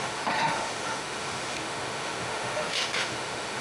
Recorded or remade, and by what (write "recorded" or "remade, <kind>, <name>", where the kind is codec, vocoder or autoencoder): remade, autoencoder, DAC-VAE